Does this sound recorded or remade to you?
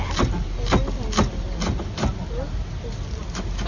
recorded